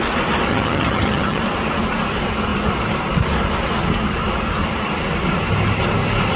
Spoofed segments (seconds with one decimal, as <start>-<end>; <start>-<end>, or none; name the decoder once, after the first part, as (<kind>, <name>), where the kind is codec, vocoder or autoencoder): 0.5-1.4 (vocoder, HiFi-GAN)